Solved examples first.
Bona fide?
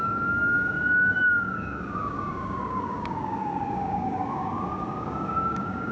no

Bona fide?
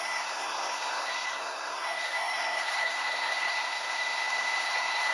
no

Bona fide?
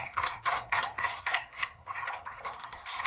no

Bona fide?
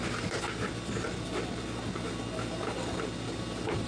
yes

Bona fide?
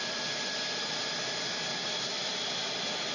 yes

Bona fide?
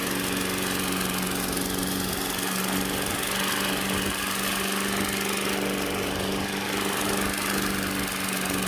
yes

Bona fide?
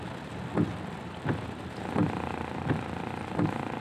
yes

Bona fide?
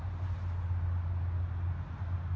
yes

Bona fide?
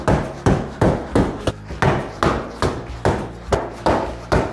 yes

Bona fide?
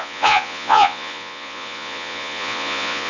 no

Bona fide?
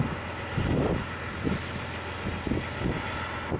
yes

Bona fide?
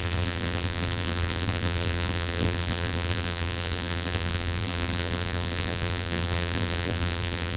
no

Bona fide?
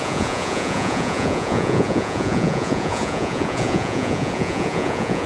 no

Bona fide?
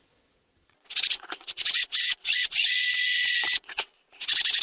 no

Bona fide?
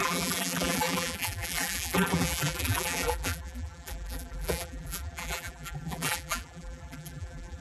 no